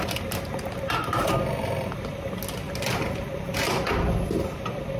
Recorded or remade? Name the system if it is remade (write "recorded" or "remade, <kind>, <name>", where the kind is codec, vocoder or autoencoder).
recorded